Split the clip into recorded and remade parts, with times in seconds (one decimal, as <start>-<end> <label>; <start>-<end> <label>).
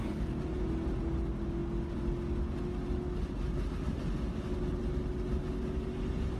0.0-6.4 recorded